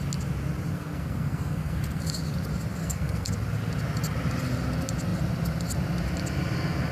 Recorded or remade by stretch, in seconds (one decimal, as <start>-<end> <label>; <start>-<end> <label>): 0.0-0.7 recorded; 0.7-2.0 remade; 2.0-2.8 recorded; 2.8-3.3 remade; 3.3-6.9 recorded